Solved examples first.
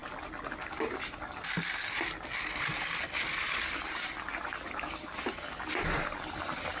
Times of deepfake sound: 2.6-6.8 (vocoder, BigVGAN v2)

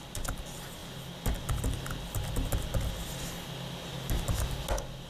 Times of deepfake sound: none

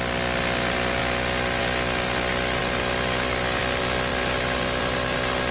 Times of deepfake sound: none

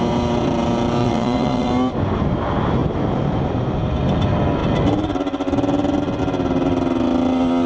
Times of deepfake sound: 1.0-1.7 (vocoder, WaveNeXt)

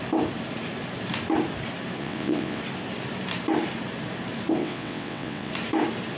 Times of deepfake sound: 2.0-2.6 (vocoder, WaveNeXt); 4.6-5.5

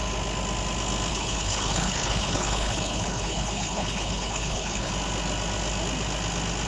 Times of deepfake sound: 1.1-4.9 (codec, HILCodec)